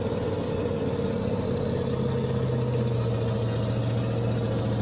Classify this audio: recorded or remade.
recorded